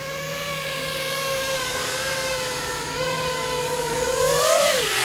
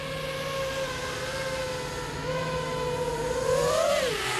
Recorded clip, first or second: second